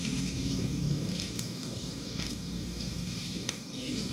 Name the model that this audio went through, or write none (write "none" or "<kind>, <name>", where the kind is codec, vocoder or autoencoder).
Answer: codec, DAC